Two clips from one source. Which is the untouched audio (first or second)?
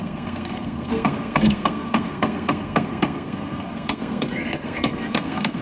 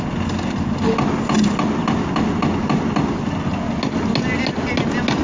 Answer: second